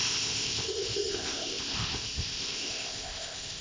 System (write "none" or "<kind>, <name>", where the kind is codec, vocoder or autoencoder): codec, ZipCodec